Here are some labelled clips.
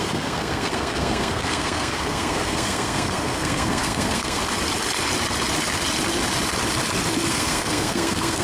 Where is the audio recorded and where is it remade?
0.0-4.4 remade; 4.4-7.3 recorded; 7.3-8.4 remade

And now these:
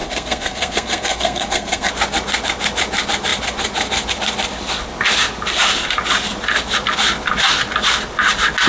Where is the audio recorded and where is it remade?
0.0-1.9 remade; 1.9-8.7 recorded

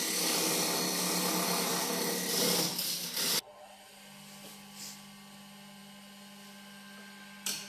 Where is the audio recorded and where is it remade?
0.0-7.7 recorded

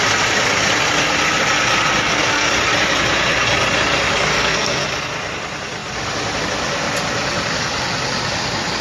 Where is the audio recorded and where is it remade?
0.0-2.0 recorded; 2.0-2.5 remade; 2.5-4.3 recorded; 4.3-4.8 remade; 4.8-8.8 recorded

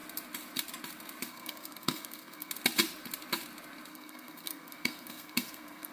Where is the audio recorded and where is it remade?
0.0-1.3 recorded; 1.3-2.5 remade; 2.5-3.9 recorded; 3.9-5.9 remade